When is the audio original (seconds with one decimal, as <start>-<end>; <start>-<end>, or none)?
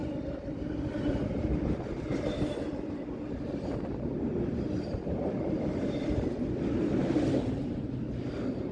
0.0-8.7